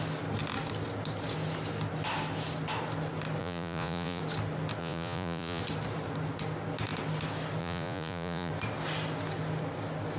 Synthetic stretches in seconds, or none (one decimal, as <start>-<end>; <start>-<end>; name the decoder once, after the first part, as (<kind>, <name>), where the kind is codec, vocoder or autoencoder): 3.4-4.2 (vocoder, Vocos); 4.8-5.6; 7.6-8.5